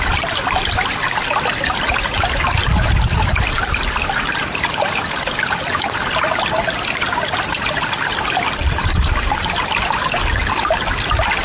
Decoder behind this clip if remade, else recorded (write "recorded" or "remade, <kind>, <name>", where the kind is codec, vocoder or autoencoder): recorded